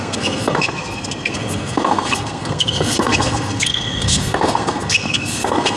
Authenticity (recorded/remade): remade